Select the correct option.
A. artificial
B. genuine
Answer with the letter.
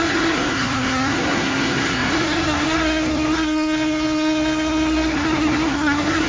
A